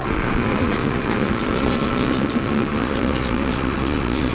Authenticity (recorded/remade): remade